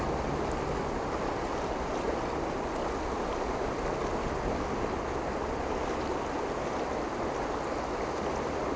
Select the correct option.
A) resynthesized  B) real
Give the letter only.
B